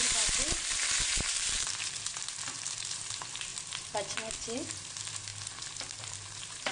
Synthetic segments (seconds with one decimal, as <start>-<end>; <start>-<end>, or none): 0.0-3.5; 4.3-5.3; 6.0-6.7